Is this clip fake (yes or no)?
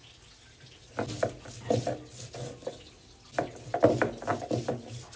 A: no